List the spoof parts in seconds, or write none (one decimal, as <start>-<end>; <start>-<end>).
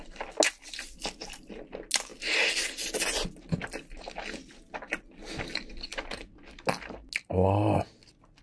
none